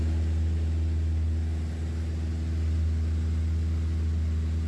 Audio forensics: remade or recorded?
recorded